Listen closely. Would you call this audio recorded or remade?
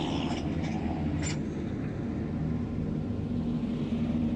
recorded